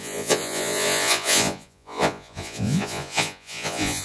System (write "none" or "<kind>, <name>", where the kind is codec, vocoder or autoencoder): vocoder, Vocos